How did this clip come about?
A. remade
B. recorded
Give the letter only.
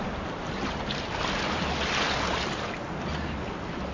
B